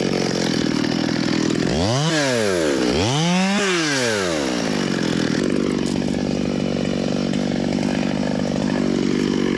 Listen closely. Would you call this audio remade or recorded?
recorded